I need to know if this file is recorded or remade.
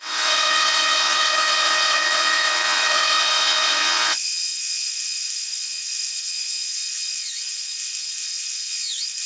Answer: remade